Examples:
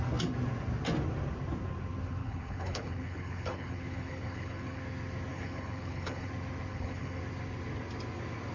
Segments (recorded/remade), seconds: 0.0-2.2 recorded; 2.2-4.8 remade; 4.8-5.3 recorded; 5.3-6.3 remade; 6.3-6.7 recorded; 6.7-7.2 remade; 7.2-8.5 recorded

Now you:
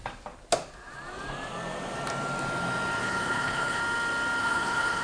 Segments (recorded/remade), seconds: 0.0-3.0 recorded; 3.0-3.8 remade; 3.8-4.4 recorded; 4.4-5.0 remade

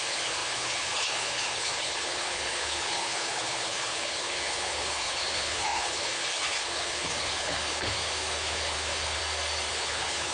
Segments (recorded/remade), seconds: 0.0-9.2 remade; 9.2-9.7 recorded; 9.7-10.3 remade

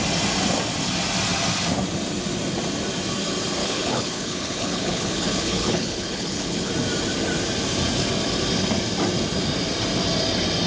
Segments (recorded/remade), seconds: 0.0-3.6 recorded; 3.6-6.7 remade; 6.7-10.7 recorded

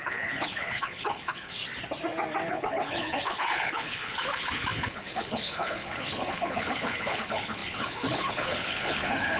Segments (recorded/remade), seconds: 0.0-1.6 remade; 1.6-2.5 recorded; 2.5-9.4 remade

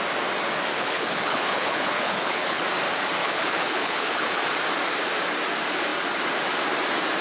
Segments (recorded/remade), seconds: 0.0-0.7 recorded; 0.7-2.6 remade; 2.6-3.2 recorded; 3.2-4.4 remade; 4.4-7.2 recorded

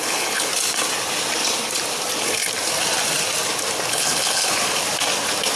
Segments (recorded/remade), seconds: 0.0-0.5 remade; 0.5-3.9 recorded; 3.9-4.5 remade; 4.5-5.6 recorded